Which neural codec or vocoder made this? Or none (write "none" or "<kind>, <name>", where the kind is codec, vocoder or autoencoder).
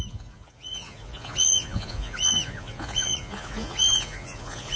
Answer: vocoder, Vocos